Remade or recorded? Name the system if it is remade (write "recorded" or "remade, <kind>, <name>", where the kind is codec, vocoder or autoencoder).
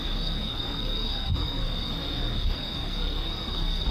remade, codec, SNAC